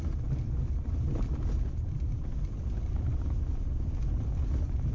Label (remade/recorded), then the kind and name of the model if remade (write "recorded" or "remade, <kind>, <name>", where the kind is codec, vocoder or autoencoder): recorded